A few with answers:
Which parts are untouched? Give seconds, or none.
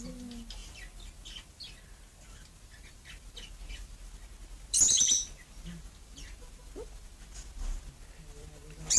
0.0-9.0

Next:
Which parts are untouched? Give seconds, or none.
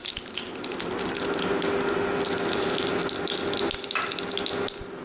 0.0-2.5; 3.0-5.0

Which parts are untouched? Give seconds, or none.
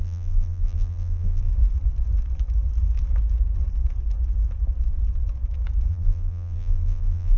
1.5-5.9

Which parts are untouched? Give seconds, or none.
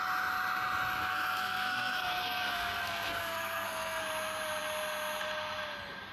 0.0-1.0; 4.0-6.1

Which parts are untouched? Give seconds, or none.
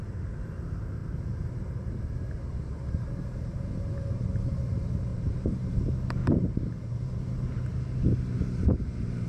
0.0-1.0; 4.4-5.1; 5.8-6.2; 7.6-9.3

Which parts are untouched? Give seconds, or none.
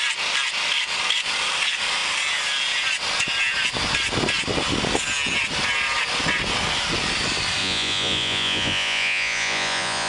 0.0-7.6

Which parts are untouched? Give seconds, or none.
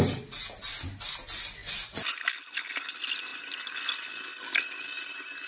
0.0-5.5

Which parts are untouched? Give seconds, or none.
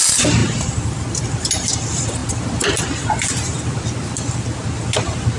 0.0-5.4